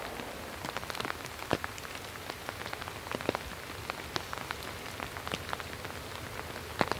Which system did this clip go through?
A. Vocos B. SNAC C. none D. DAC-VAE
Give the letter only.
C